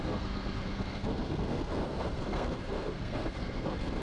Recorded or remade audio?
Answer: remade